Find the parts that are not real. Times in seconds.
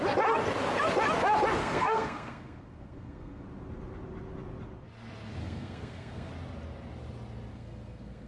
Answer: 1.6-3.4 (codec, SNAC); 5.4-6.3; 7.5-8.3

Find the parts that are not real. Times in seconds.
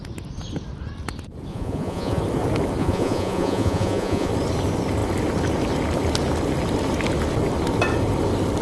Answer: 1.5-2.2 (vocoder, Vocos); 2.8-4.3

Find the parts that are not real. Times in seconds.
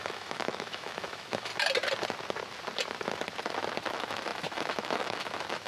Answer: 0.0-1.5 (autoencoder, DAC-VAE); 3.9-5.7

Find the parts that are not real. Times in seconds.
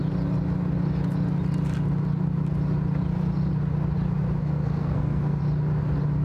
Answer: 4.4-5.4 (codec, SNAC)